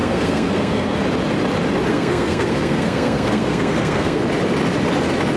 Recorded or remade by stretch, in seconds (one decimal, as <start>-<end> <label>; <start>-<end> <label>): 0.0-1.0 remade; 1.0-1.9 recorded; 1.9-4.2 remade; 4.2-5.4 recorded